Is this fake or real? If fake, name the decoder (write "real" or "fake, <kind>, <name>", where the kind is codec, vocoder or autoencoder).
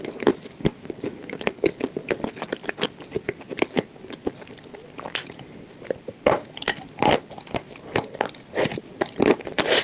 real